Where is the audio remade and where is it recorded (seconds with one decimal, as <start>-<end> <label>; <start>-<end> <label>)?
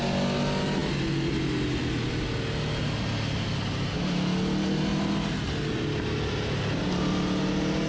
0.0-7.9 recorded